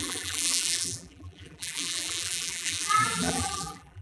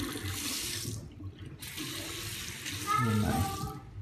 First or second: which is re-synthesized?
first